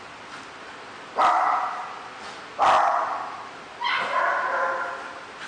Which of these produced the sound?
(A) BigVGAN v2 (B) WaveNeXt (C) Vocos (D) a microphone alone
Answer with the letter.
D